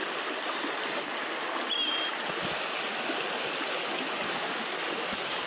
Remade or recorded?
recorded